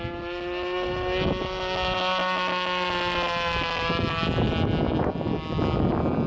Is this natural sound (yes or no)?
yes